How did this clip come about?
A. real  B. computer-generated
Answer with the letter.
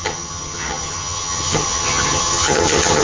B